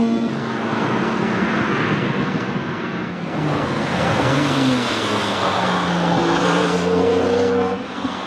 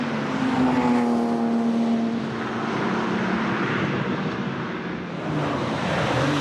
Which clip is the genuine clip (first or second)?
second